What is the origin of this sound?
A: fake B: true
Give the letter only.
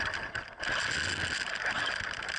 B